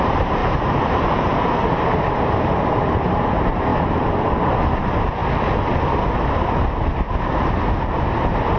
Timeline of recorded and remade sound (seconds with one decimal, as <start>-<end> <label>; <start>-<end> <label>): 0.0-0.4 remade; 0.4-1.6 recorded; 1.6-3.7 remade; 3.7-4.6 recorded; 4.6-5.2 remade; 5.2-5.8 recorded; 5.8-8.6 remade